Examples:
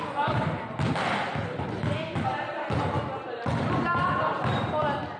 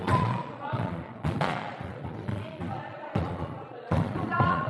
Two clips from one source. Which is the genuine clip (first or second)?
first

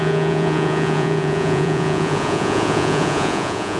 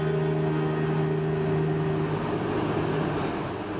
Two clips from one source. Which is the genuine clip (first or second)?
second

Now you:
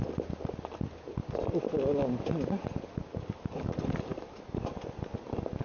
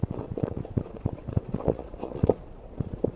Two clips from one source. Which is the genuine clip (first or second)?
first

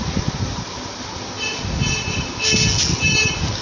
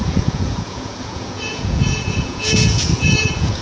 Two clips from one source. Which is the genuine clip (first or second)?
first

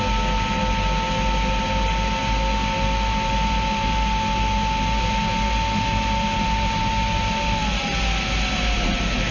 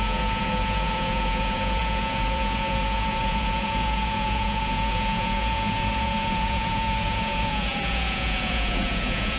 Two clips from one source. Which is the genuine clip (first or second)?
first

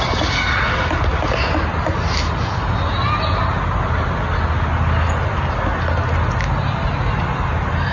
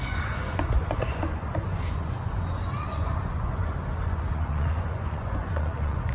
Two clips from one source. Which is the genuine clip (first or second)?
first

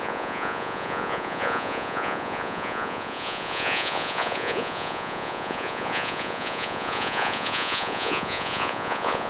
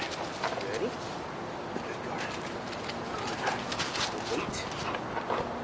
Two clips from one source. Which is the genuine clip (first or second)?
second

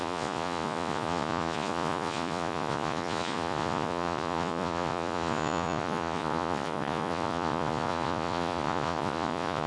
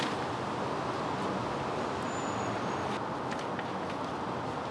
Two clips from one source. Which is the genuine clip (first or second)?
second